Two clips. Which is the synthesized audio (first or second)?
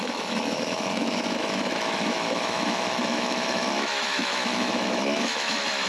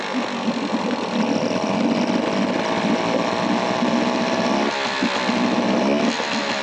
first